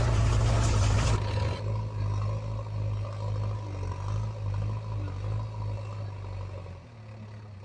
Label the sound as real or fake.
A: real